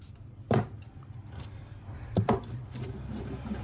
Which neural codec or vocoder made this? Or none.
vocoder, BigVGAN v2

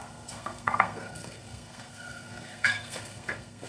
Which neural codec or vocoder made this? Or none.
codec, SNAC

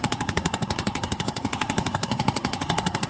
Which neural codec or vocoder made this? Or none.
codec, SNAC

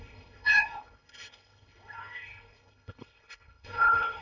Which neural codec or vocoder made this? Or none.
codec, HILCodec